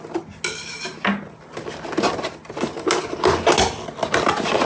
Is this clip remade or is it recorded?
recorded